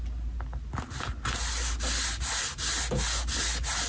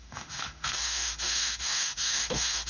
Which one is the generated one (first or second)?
second